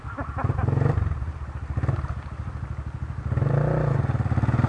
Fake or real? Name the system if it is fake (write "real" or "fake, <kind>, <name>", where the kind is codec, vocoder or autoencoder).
real